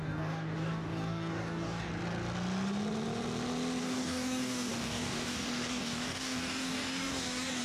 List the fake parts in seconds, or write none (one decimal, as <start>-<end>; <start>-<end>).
0.0-1.9; 3.8-7.6

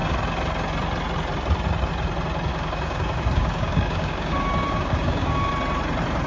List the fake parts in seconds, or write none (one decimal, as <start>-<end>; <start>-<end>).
2.5-5.5

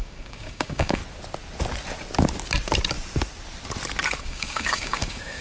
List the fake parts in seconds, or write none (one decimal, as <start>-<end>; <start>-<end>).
0.0-1.0; 4.2-5.4

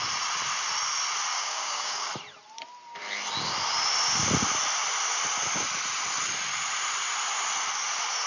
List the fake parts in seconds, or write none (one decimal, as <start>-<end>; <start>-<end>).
1.3-2.1

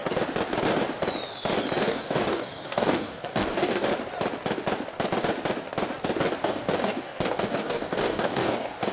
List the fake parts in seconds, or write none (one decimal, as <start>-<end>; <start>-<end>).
1.8-3.9; 6.4-8.9

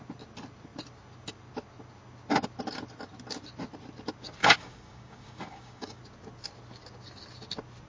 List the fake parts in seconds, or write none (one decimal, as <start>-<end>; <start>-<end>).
4.4-6.0

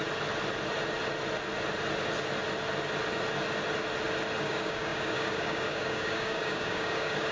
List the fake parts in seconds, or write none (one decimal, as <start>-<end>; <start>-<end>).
4.4-7.3